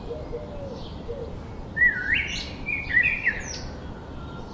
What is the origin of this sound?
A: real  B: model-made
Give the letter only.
A